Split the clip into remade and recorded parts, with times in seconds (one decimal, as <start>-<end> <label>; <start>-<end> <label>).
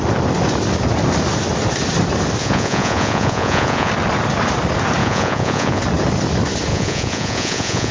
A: 0.0-2.4 recorded; 2.4-3.9 remade; 3.9-5.0 recorded; 5.0-5.8 remade; 5.8-6.7 recorded; 6.7-7.9 remade